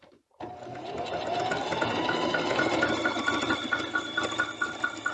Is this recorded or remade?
recorded